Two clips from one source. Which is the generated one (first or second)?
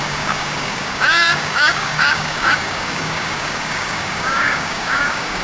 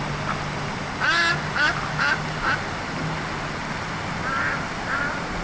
first